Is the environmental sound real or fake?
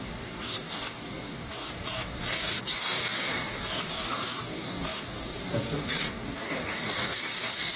fake